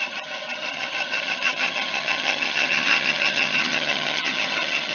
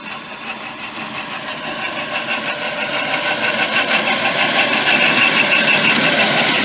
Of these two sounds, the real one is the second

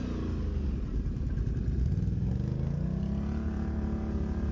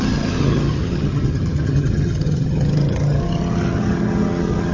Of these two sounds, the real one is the first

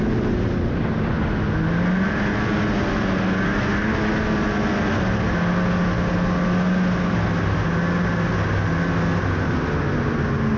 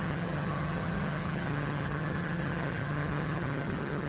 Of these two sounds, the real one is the first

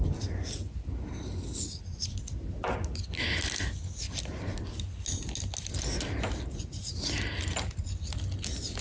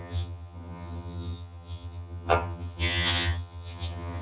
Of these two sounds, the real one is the first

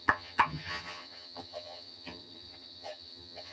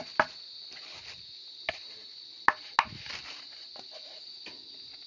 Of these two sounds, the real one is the second